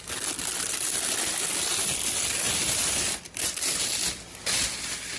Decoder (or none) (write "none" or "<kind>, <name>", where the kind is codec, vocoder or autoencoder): none